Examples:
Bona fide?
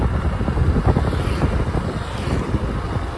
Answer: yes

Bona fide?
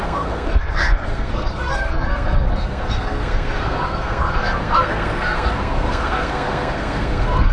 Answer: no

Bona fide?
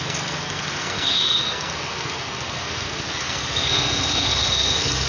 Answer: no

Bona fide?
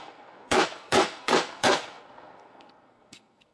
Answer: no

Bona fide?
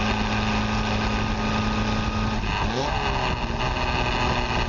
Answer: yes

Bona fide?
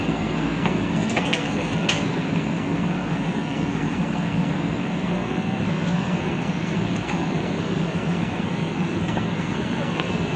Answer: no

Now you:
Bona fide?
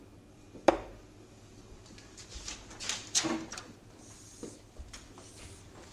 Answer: yes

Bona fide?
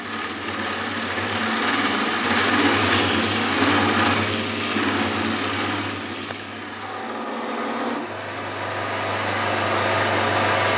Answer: yes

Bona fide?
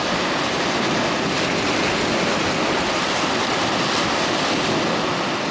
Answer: yes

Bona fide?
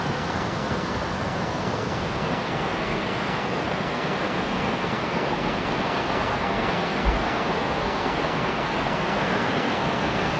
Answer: no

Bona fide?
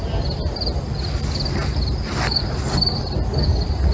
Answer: yes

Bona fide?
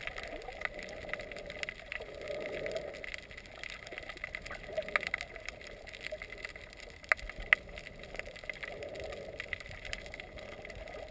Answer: yes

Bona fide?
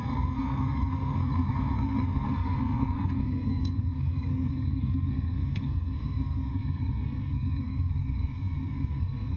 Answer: no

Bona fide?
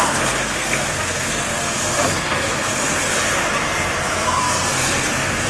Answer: no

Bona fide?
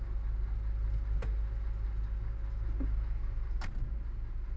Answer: yes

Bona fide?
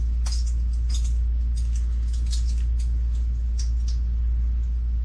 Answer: yes